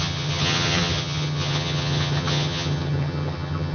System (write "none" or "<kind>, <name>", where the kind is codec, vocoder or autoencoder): vocoder, HiFi-GAN